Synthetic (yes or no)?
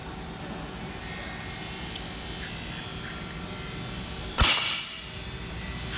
no